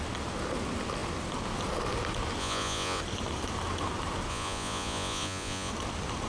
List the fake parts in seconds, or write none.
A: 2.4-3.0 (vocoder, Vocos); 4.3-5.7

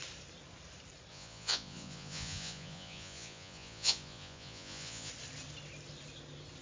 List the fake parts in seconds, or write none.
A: 1.1-5.1 (vocoder, Vocos)

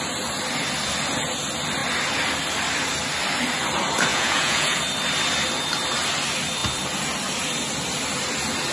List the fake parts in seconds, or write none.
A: 4.1-4.8 (vocoder, Vocos)

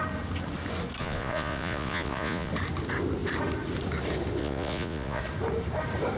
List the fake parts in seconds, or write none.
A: 1.0-2.5 (vocoder, Vocos); 4.4-5.2

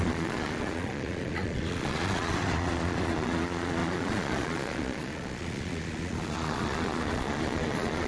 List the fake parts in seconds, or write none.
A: 0.0-8.1 (vocoder, Vocos)

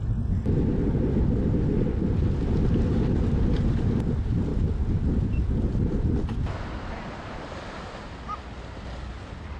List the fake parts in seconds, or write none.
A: none

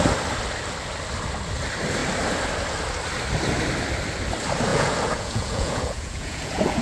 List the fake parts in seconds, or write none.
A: 4.7-6.8 (vocoder, Vocos)

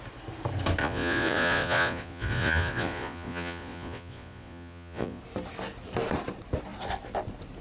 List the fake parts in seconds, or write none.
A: 0.8-5.2 (vocoder, Vocos)